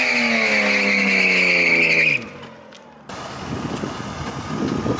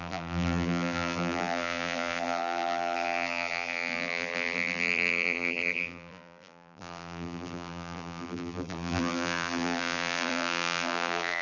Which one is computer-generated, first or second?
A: second